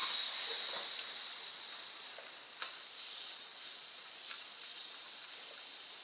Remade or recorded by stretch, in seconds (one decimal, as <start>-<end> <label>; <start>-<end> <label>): 0.0-6.0 recorded